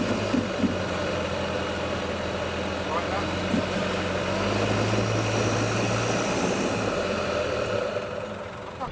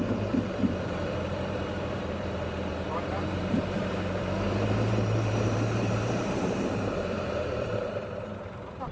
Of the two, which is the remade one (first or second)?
second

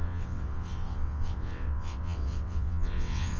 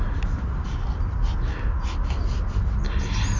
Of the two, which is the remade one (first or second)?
first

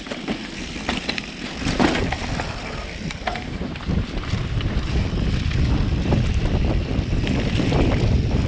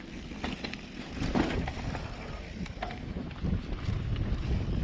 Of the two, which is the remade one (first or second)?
first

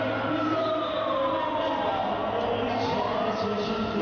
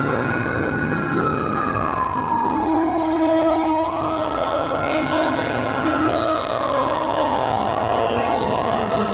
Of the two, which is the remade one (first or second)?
second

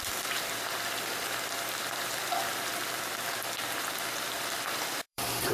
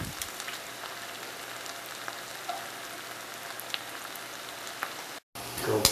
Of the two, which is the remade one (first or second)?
first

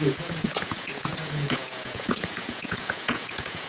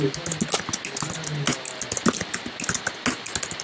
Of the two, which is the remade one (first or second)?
first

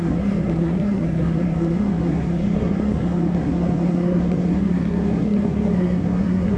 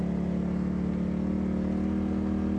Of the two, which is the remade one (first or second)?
first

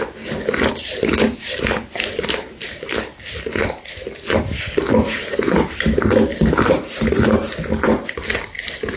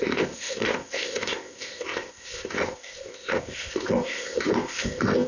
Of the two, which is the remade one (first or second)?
second